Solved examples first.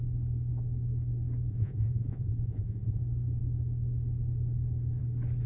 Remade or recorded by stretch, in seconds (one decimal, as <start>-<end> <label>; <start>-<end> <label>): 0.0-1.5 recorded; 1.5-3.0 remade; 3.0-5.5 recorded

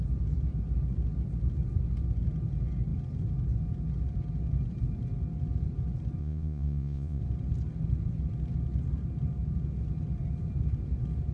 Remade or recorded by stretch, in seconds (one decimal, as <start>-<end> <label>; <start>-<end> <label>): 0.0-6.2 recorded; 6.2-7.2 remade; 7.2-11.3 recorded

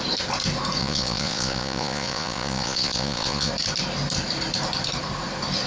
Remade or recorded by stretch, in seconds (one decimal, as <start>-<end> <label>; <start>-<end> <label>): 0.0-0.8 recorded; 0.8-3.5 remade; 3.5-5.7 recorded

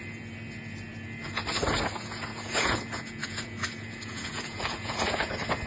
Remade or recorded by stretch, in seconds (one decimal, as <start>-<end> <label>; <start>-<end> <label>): 0.0-2.3 recorded; 2.3-5.3 remade; 5.3-5.7 recorded

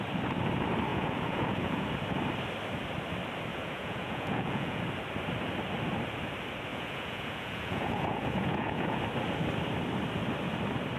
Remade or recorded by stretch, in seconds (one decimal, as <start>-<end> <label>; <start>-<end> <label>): 0.0-0.9 recorded; 0.9-1.9 remade; 1.9-3.5 recorded; 3.5-4.8 remade; 4.8-6.7 recorded; 6.7-9.0 remade; 9.0-11.0 recorded

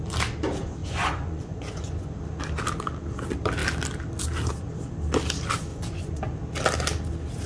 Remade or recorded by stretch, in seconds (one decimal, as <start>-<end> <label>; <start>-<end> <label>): 0.0-0.8 recorded; 0.8-2.1 remade; 2.1-5.7 recorded; 5.7-6.2 remade; 6.2-7.5 recorded

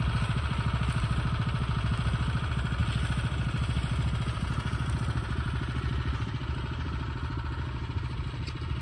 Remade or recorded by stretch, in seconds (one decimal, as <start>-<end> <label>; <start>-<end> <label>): 0.0-8.8 recorded